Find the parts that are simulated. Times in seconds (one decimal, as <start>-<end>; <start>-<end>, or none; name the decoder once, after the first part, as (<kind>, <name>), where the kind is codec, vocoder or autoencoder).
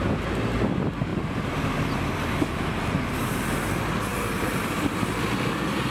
1.1-2.7 (vocoder, BigVGAN v2)